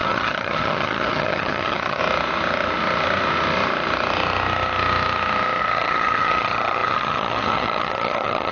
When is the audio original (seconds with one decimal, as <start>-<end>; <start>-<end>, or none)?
2.0-5.6